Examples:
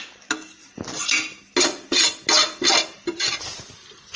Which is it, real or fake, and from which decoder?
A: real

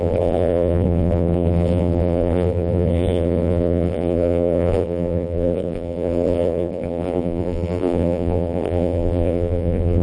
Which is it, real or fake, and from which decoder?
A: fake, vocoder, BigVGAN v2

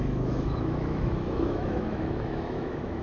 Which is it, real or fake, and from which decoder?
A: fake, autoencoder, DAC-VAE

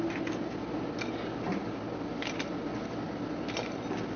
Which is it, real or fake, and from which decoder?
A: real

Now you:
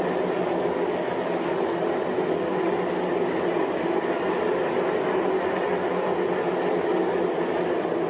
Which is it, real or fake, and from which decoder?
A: real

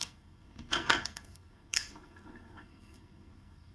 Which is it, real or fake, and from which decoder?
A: fake, codec, SNAC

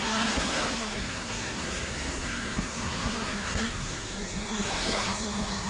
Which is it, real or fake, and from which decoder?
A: fake, codec, SNAC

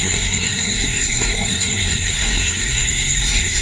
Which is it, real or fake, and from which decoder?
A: fake, codec, SNAC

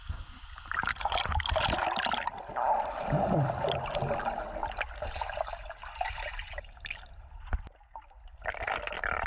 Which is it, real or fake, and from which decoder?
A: real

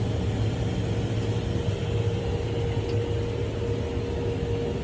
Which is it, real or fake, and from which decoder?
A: real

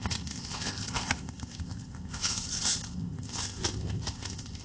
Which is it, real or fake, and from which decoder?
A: fake, codec, ZipCodec